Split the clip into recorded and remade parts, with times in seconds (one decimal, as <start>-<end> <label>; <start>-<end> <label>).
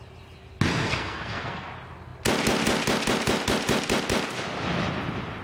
0.0-0.7 recorded; 0.7-1.7 remade; 1.7-5.4 recorded